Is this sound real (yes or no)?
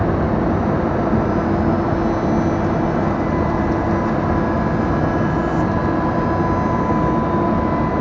yes